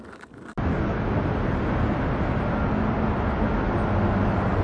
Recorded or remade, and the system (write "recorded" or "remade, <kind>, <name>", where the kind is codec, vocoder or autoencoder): recorded